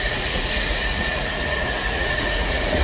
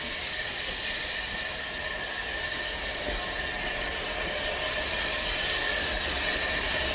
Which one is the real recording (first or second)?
second